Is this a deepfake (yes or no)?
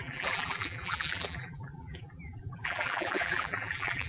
yes